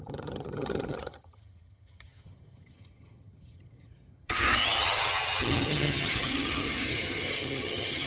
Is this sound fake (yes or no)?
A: yes